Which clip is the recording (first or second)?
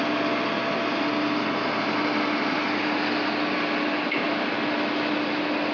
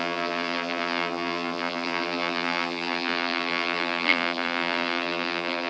first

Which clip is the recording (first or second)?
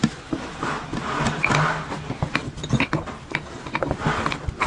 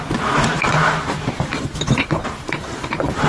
first